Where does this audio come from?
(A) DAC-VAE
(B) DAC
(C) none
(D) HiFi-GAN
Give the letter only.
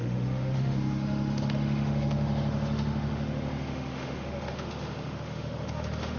A